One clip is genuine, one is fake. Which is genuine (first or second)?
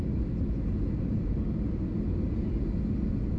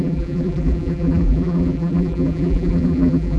first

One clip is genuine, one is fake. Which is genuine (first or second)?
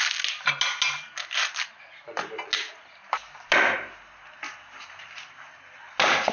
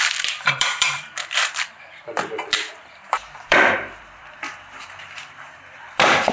first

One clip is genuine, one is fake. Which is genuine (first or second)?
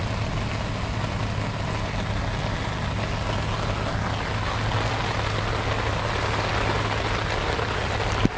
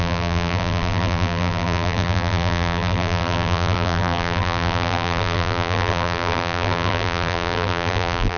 first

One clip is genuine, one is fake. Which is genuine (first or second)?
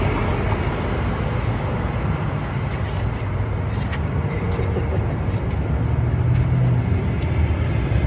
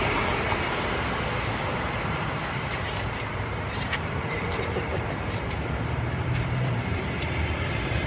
first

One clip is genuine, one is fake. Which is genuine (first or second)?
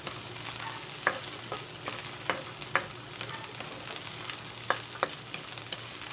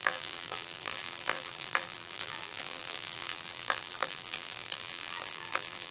first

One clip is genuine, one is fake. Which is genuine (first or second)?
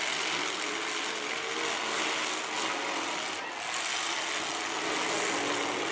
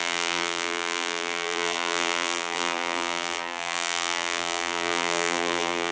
first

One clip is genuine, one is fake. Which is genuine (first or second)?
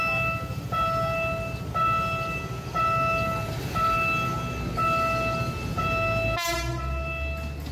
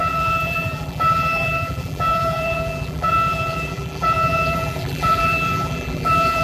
first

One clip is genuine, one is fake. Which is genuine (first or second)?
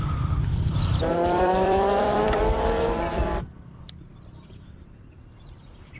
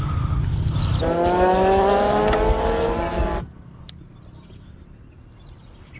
second